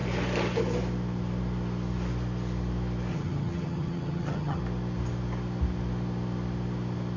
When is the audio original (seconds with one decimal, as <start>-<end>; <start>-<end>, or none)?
0.0-3.1; 4.6-7.2